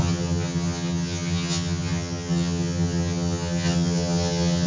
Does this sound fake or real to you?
fake